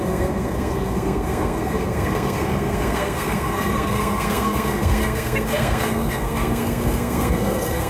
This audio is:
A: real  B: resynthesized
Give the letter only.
B